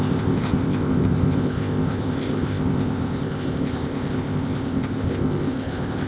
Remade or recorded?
remade